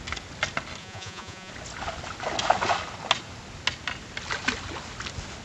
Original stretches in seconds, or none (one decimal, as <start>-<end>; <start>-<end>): 0.0-0.8; 1.5-5.4